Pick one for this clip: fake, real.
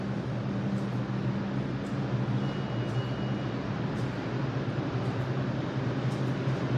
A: real